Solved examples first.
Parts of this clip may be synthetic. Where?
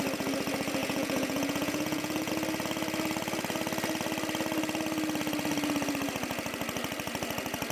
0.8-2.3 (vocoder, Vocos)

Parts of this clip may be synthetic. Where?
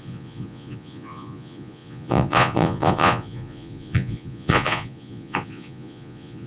0.0-6.5 (vocoder, Vocos)